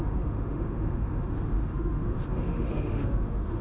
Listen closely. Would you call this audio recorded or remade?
remade